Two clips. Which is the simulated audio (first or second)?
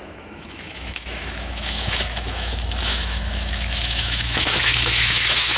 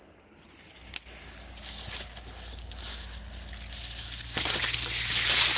first